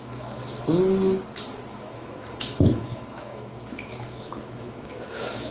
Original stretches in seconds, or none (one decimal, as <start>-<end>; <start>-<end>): 0.4-1.7